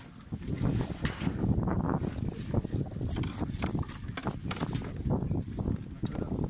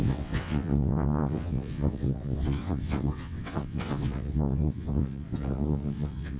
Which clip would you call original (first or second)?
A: first